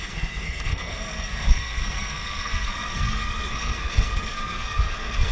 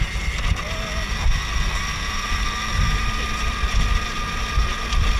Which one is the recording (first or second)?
second